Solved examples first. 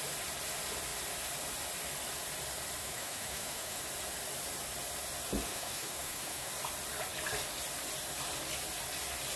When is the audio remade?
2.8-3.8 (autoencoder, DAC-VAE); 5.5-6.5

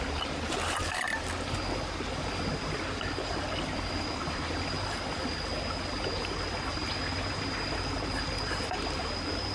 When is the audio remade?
none

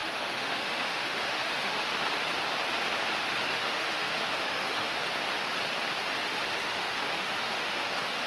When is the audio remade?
0.0-1.9 (autoencoder, DAC-VAE); 3.5-4.9; 6.2-8.3

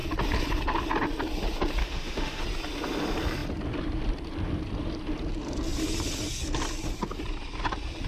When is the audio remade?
1.8-2.4 (autoencoder, DAC-VAE)